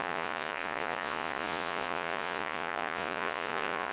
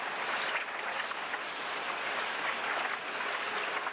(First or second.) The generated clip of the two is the first